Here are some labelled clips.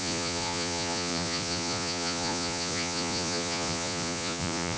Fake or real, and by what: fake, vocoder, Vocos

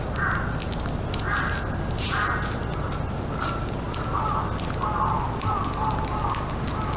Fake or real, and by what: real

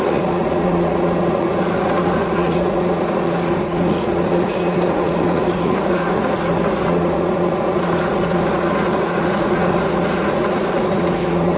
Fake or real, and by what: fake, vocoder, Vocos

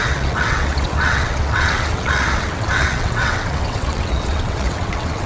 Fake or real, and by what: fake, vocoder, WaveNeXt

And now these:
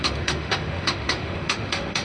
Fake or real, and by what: fake, autoencoder, DAC-VAE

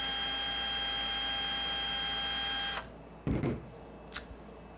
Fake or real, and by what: real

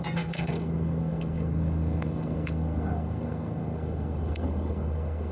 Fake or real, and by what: fake, codec, SNAC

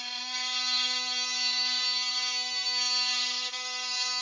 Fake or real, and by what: fake, codec, SNAC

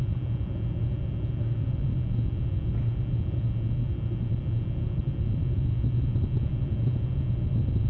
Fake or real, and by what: real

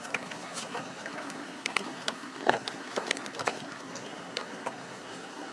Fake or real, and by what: fake, codec, SNAC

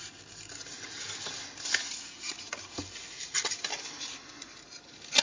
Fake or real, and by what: real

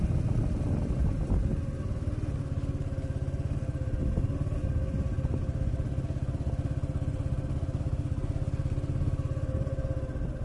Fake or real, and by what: real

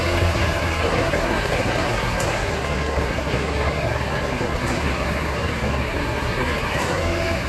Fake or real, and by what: fake, codec, SNAC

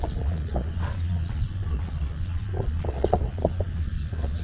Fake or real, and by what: fake, vocoder, Vocos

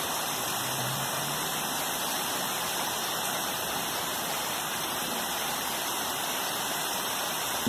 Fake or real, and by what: fake, vocoder, BigVGAN v2